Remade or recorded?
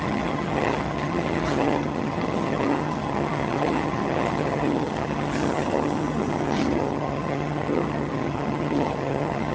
remade